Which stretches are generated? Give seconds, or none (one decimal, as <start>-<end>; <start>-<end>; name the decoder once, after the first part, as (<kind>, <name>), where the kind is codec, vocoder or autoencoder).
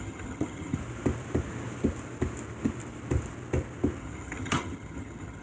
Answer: 0.0-0.8 (vocoder, HiFi-GAN); 4.0-5.4